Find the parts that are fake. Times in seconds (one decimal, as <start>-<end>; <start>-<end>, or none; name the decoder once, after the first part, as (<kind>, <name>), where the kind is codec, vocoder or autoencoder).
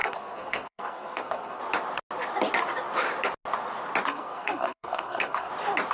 0.0-1.6 (codec, SNAC); 4.1-5.5